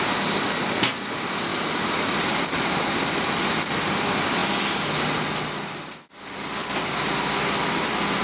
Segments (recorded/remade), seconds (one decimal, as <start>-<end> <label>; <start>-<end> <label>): 0.0-1.5 recorded; 1.5-2.8 remade; 2.8-8.2 recorded